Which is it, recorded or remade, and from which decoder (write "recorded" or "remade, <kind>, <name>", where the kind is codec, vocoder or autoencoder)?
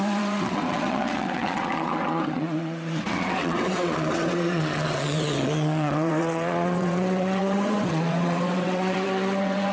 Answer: remade, vocoder, WaveNeXt